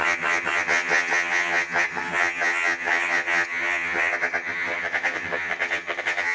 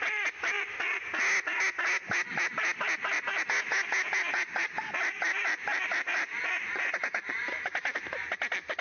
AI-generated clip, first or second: first